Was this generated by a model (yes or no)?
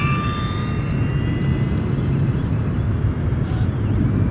no